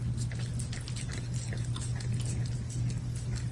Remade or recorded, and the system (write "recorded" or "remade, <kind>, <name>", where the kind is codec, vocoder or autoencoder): recorded